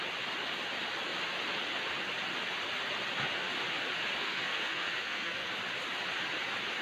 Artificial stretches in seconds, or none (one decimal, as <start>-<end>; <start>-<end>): 4.2-5.5